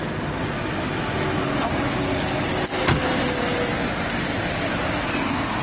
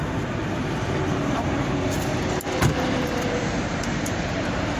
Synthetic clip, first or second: second